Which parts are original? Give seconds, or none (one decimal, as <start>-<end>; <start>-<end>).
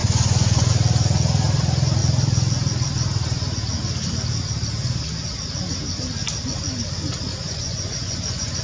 0.7-7.3